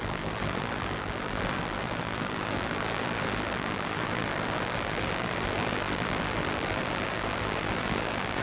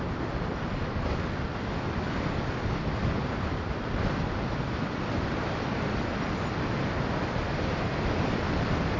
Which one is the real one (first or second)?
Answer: second